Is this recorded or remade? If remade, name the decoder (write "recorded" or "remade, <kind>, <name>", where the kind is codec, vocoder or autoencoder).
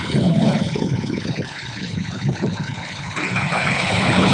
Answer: remade, codec, HILCodec